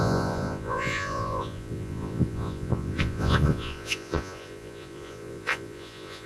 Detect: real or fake fake